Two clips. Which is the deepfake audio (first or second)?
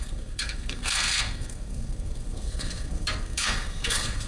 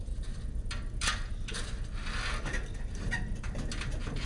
first